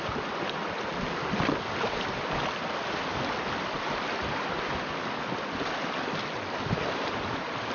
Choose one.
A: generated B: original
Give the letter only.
B